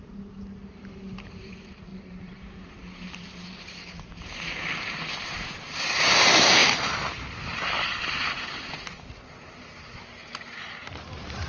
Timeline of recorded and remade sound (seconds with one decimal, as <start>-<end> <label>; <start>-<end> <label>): 0.0-6.6 remade; 6.6-10.9 recorded; 10.9-11.5 remade

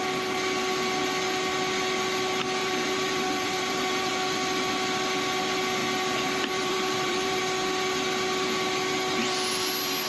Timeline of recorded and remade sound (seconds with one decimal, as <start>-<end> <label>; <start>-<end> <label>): 0.0-2.6 recorded; 2.6-4.1 remade; 4.1-5.8 recorded; 5.8-7.4 remade; 7.4-10.1 recorded

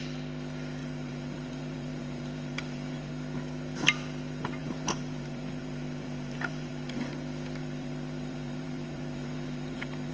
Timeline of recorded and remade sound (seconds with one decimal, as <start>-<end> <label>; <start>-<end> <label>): 0.0-0.8 recorded; 0.8-3.1 remade; 3.1-4.6 recorded; 4.6-7.1 remade; 7.1-7.6 recorded; 7.6-10.1 remade

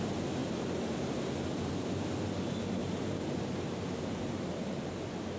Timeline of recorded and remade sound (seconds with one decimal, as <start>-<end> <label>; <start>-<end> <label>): 0.0-2.8 recorded; 2.8-4.9 remade; 4.9-5.4 recorded